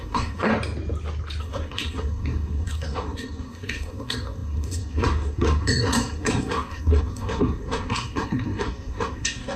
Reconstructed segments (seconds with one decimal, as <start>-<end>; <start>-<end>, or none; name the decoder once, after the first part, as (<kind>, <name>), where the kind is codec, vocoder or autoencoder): 0.0-0.5 (codec, SNAC); 1.4-9.6